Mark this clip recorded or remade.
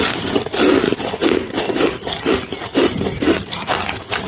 recorded